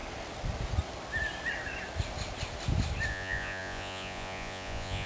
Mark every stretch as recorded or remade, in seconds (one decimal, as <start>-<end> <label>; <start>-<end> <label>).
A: 0.0-3.1 recorded; 3.1-5.1 remade